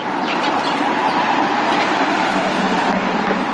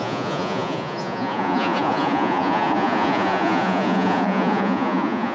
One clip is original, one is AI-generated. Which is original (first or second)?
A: first